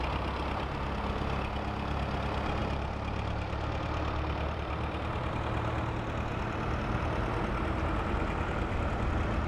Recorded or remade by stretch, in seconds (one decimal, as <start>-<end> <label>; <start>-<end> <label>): 0.0-2.6 recorded; 2.6-5.3 remade; 5.3-6.3 recorded; 6.3-9.0 remade; 9.0-9.5 recorded